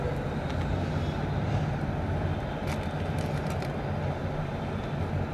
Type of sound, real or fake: real